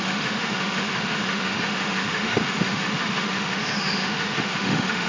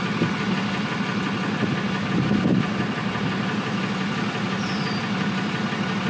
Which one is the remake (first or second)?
first